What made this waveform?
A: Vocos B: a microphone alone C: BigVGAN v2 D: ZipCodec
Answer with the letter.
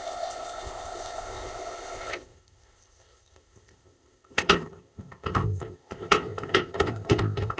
D